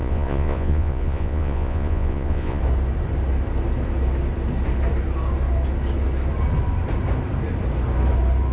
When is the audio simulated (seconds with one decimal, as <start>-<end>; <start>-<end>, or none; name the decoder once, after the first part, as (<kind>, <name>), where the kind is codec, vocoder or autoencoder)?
0.0-2.6 (vocoder, Vocos)